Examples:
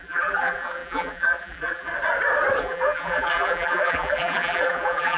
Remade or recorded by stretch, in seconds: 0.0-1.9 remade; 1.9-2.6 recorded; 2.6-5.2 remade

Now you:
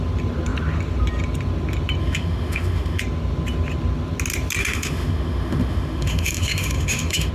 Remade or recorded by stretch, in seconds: 0.0-2.0 recorded; 2.0-3.0 remade; 3.0-4.6 recorded; 4.6-7.3 remade

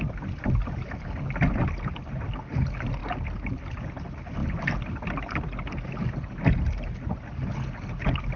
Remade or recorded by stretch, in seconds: 0.0-8.4 recorded

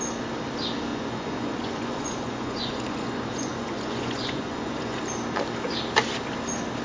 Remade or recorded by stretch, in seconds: 0.0-0.9 recorded; 0.9-5.0 remade; 5.0-6.8 recorded